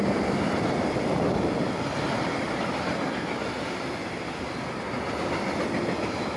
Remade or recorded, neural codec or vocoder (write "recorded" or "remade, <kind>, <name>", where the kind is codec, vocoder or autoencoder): recorded